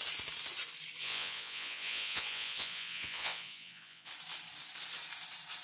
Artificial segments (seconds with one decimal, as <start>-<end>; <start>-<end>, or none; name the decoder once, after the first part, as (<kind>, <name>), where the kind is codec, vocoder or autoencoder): 1.0-4.1 (vocoder, Vocos)